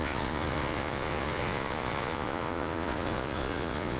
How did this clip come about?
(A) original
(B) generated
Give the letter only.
B